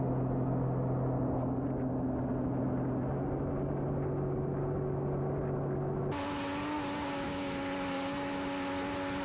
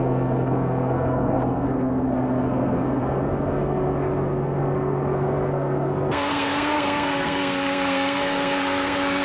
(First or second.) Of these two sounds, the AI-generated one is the second